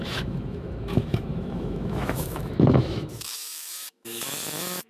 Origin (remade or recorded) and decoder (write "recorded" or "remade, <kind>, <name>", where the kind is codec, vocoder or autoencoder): remade, autoencoder, DAC-VAE